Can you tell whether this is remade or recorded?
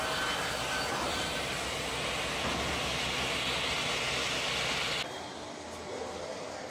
recorded